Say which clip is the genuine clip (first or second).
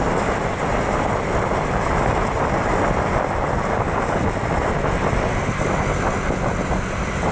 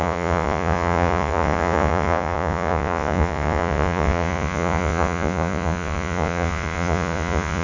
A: first